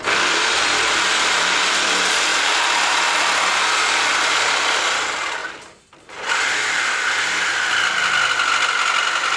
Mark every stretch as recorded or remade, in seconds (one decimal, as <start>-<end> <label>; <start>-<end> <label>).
0.0-9.4 recorded